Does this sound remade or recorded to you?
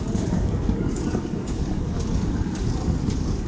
remade